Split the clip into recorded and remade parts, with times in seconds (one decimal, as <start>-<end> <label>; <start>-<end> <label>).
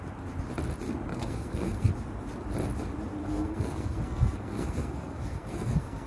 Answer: 0.0-1.1 recorded; 1.1-1.9 remade; 1.9-3.2 recorded; 3.2-6.1 remade